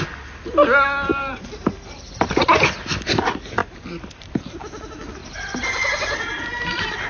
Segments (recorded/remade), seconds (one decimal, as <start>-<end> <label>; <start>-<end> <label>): 0.0-1.1 recorded; 1.1-2.9 remade; 2.9-3.6 recorded; 3.6-4.3 remade; 4.3-5.2 recorded; 5.2-7.1 remade